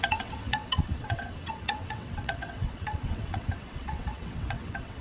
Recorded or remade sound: remade